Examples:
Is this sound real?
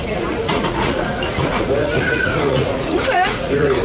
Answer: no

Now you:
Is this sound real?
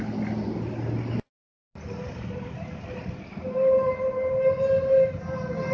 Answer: yes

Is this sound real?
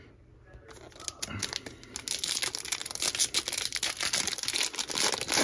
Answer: yes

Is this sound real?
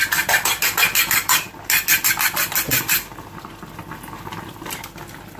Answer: yes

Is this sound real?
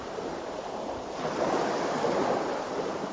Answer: yes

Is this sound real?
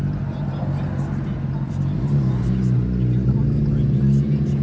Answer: yes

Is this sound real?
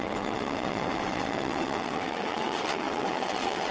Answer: no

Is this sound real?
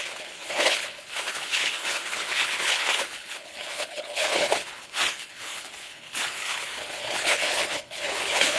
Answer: no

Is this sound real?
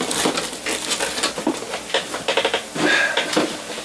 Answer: yes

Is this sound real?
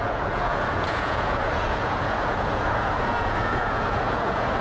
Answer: no